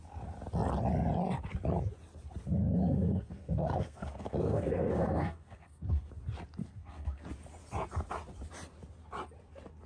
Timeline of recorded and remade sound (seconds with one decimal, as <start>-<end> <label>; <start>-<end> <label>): 0.0-2.8 recorded; 2.8-6.1 remade; 6.1-6.6 recorded; 6.6-7.2 remade; 7.2-9.9 recorded